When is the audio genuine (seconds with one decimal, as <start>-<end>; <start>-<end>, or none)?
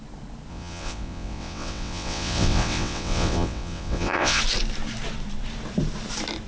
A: 0.0-0.5; 4.4-6.5